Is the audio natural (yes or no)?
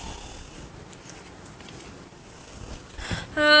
yes